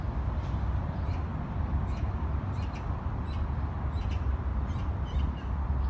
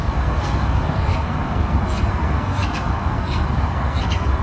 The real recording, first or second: first